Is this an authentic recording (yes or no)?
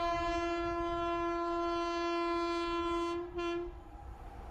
yes